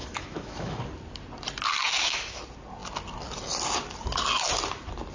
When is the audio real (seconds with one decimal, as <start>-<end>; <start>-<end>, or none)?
0.8-1.9; 2.4-5.1